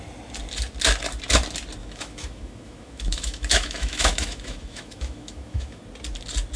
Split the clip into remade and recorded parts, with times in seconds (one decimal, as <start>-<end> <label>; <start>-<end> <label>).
0.0-1.8 recorded; 1.8-5.8 remade; 5.8-6.6 recorded